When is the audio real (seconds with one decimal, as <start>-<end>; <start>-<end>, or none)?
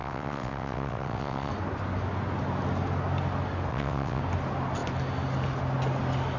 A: 1.5-3.7; 4.2-6.4